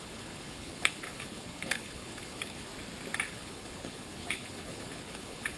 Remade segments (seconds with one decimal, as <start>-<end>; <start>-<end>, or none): 0.0-2.7; 3.3-5.6